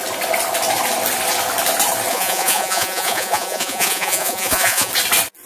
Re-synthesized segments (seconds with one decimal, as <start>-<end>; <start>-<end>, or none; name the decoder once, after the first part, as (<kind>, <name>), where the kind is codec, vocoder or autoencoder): 2.1-4.9 (vocoder, Vocos)